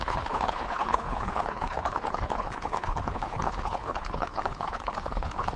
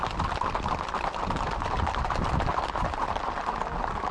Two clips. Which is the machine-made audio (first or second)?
first